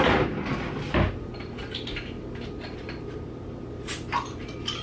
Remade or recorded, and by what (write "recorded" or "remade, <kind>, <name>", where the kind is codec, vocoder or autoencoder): recorded